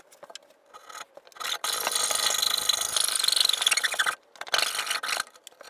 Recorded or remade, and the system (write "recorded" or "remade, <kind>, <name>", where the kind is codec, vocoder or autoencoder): recorded